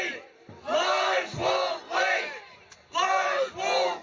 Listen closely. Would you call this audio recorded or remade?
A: recorded